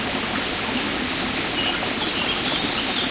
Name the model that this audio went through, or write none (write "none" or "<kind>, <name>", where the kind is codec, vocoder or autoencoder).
none